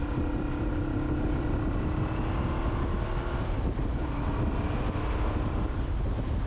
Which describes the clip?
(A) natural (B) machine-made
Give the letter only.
A